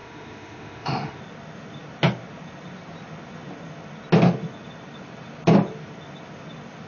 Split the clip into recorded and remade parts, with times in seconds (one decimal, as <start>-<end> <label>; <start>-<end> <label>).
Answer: 0.0-1.2 remade; 1.2-6.9 recorded